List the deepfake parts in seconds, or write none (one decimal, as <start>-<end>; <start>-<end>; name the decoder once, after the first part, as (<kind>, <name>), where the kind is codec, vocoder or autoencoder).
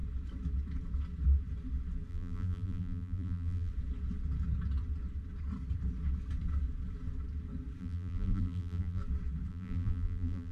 2.1-3.7 (vocoder, BigVGAN v2); 7.8-9.0; 9.5-10.5